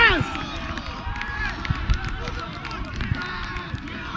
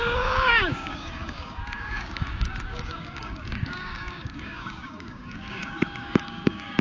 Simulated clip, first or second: second